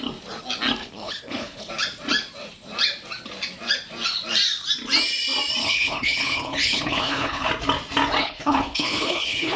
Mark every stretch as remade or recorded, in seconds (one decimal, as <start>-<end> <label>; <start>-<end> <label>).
0.0-0.8 recorded; 0.8-1.7 remade; 1.7-5.6 recorded; 5.6-7.5 remade; 7.5-8.2 recorded; 8.2-9.6 remade